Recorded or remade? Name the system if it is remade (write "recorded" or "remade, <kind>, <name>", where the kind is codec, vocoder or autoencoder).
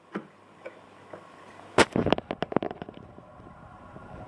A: recorded